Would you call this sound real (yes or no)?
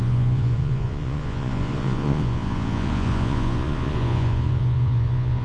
no